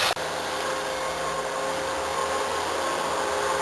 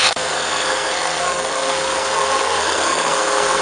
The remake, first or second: second